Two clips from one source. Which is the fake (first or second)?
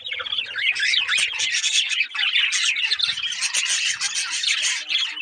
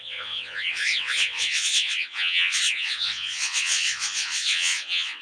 second